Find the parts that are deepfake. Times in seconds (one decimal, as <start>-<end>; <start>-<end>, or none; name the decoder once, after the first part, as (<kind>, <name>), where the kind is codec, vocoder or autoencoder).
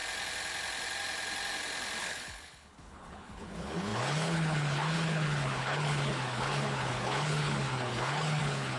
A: 2.0-8.8 (codec, HILCodec)